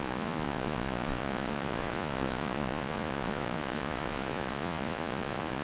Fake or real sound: fake